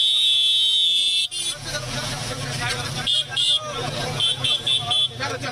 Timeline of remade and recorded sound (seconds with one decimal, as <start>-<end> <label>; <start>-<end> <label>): 0.0-5.5 recorded